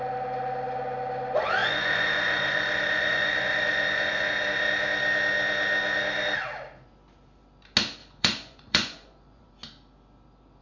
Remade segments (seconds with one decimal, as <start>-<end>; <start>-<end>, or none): 1.6-4.3; 8.0-9.5

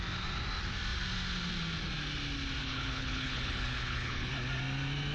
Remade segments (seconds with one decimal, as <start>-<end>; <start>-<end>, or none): 2.6-4.3